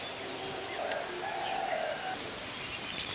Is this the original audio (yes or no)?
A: yes